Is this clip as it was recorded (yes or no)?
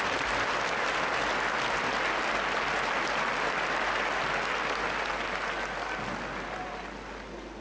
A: yes